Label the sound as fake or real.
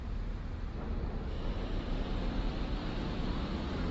real